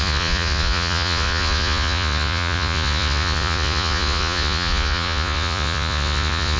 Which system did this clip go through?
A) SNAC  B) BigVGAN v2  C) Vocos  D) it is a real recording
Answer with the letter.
C